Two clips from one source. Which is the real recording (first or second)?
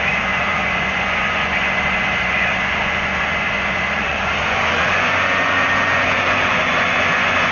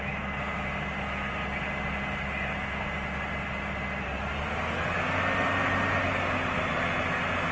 second